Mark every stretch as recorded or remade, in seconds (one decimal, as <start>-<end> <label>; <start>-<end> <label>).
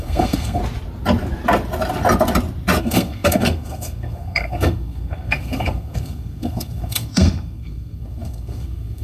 0.0-0.6 remade; 0.6-2.8 recorded; 2.8-9.0 remade